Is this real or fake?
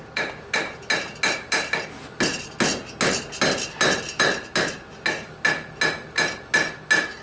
real